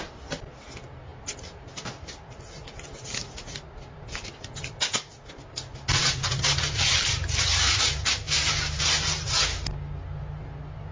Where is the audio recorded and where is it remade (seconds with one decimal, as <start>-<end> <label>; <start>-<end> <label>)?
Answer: 0.0-10.9 recorded